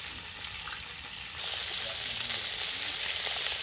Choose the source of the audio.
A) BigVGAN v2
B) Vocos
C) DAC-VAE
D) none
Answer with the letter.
D